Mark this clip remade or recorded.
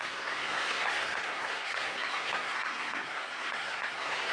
remade